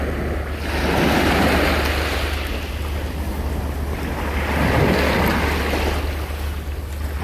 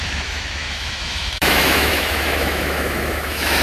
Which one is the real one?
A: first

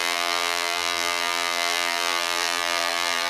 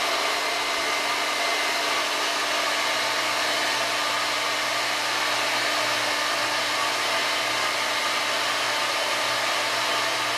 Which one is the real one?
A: second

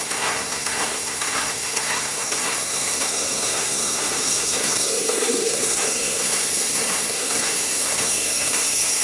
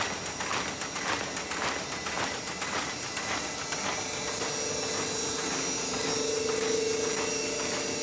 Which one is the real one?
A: second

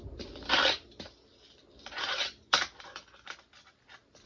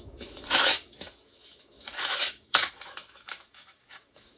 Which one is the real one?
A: first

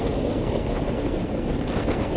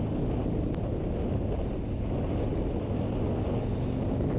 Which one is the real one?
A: second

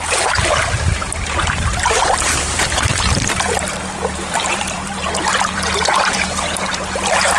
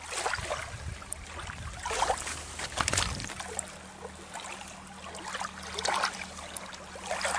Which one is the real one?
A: second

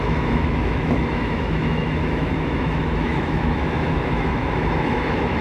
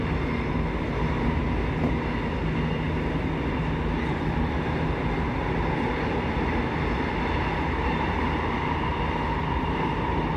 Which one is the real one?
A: second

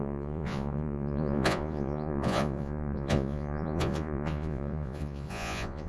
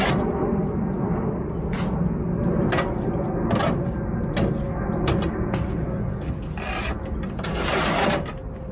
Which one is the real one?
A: second